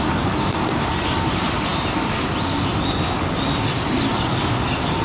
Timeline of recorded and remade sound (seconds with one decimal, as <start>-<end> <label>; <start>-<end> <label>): 0.0-5.0 recorded

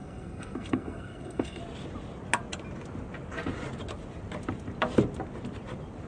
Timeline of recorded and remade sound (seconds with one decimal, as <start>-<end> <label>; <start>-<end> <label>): 0.0-1.6 remade; 1.6-6.1 recorded

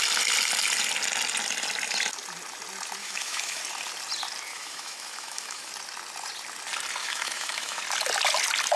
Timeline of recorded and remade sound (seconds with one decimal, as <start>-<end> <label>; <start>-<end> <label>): 0.0-3.0 recorded; 3.0-3.6 remade; 3.6-4.5 recorded; 4.5-5.7 remade; 5.7-7.0 recorded; 7.0-7.8 remade; 7.8-8.8 recorded

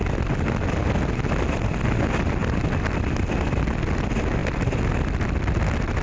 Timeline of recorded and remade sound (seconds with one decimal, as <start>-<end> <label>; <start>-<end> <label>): 0.0-6.0 recorded

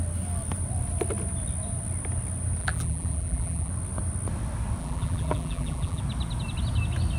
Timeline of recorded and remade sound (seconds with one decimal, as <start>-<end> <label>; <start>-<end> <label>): 0.0-2.6 recorded; 2.6-3.7 remade; 3.7-4.8 recorded; 4.8-6.0 remade; 6.0-7.2 recorded

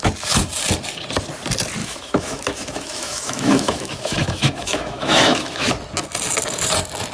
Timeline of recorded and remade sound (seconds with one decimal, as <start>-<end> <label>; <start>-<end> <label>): 0.0-1.8 recorded; 1.8-5.7 remade; 5.7-7.1 recorded

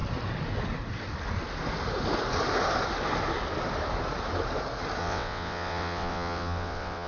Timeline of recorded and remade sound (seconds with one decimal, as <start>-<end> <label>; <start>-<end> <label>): 0.0-5.0 recorded; 5.0-7.1 remade

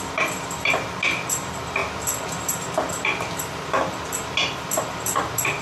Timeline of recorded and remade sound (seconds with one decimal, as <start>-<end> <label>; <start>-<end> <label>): 0.0-1.8 recorded; 1.8-5.6 remade